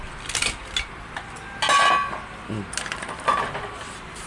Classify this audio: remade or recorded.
recorded